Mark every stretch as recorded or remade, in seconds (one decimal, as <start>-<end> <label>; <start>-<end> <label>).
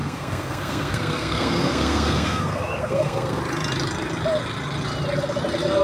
0.0-3.4 remade; 3.4-5.8 recorded